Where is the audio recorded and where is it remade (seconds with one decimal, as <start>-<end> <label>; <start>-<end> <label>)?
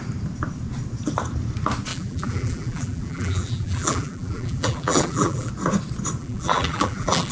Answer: 0.0-1.9 recorded; 1.9-5.5 remade; 5.5-6.2 recorded; 6.2-7.3 remade